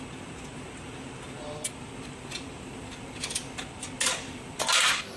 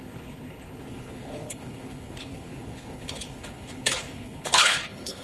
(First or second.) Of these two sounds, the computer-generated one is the second